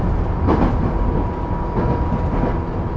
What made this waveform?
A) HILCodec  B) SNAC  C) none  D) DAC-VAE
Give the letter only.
C